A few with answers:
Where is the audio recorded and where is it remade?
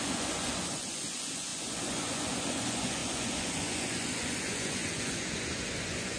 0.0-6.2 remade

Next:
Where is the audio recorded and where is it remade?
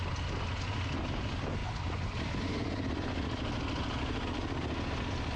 0.0-5.4 recorded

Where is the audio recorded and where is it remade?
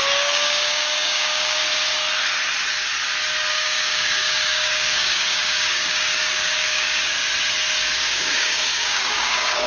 0.0-1.6 remade; 1.6-3.5 recorded; 3.5-7.2 remade; 7.2-7.8 recorded; 7.8-9.7 remade